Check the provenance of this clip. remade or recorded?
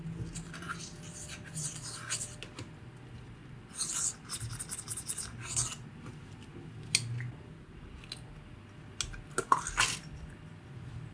recorded